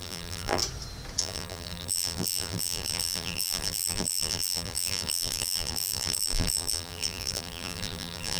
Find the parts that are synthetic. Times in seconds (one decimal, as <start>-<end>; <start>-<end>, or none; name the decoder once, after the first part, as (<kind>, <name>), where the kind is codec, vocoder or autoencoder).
0.0-0.6 (vocoder, BigVGAN v2); 1.2-8.4